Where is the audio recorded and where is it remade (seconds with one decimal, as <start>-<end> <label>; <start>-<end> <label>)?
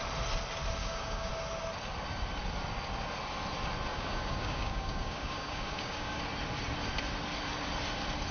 0.0-0.8 recorded; 0.8-1.3 remade; 1.3-3.9 recorded; 3.9-6.2 remade; 6.2-8.3 recorded